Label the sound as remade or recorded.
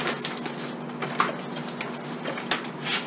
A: recorded